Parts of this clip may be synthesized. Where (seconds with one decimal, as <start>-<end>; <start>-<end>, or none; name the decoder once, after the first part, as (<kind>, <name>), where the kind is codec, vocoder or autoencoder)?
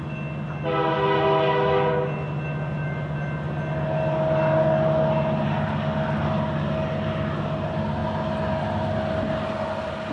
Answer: none